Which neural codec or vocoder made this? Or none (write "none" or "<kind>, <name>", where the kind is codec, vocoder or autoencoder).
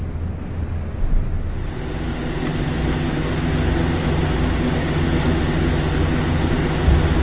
none